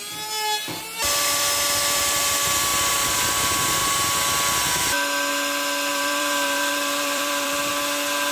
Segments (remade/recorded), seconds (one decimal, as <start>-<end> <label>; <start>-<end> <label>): 0.0-2.7 recorded; 2.7-3.2 remade; 3.2-5.9 recorded; 5.9-7.7 remade; 7.7-8.3 recorded